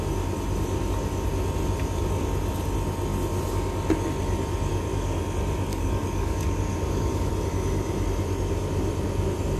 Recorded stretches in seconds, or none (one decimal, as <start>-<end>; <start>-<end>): 0.0-4.7; 5.2-5.7; 7.3-9.6